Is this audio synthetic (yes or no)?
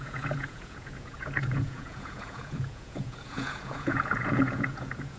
yes